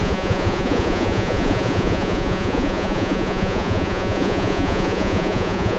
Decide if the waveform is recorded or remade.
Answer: remade